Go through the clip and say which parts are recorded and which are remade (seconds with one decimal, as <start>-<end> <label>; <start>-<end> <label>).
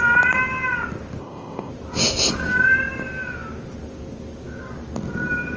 0.0-1.2 recorded; 1.2-1.7 remade; 1.7-5.6 recorded